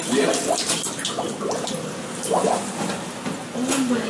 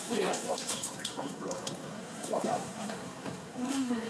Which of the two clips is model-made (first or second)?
second